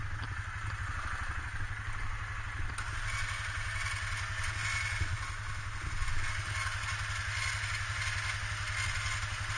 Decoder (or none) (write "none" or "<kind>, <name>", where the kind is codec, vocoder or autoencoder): none